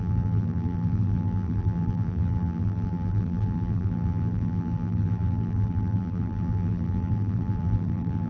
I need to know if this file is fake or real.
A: fake